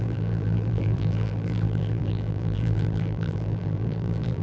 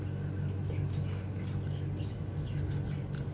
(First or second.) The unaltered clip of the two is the second